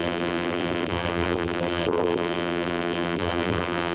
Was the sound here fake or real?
fake